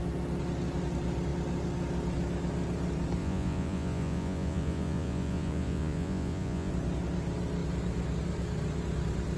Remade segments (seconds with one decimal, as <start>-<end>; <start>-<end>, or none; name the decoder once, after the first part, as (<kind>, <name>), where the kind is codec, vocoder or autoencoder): 3.2-6.7 (vocoder, Vocos)

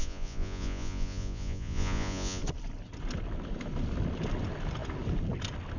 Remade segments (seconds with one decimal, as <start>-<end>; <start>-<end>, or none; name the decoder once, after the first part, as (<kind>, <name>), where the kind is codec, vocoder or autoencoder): 0.0-2.4 (vocoder, Vocos)

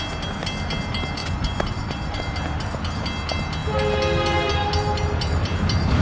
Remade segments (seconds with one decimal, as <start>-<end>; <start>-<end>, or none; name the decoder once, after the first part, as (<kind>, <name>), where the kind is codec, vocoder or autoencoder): 1.2-2.2 (vocoder, Vocos)